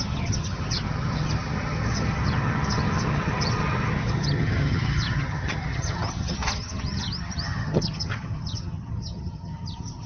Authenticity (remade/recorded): remade